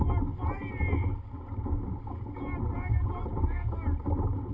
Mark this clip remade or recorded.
recorded